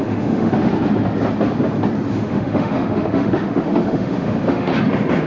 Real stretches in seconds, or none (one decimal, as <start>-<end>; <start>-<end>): 0.7-2.1; 4.7-5.3